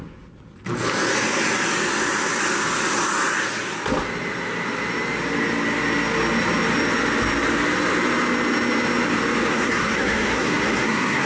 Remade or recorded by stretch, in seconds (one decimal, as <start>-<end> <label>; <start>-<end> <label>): 0.0-9.5 recorded; 9.5-11.3 remade